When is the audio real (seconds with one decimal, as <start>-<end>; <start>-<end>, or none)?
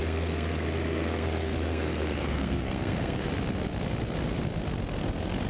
3.3-5.5